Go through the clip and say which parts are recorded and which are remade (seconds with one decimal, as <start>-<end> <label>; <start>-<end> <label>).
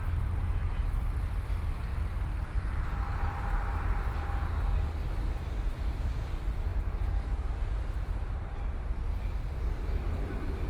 0.0-10.7 recorded